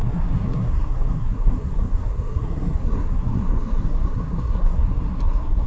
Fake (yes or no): yes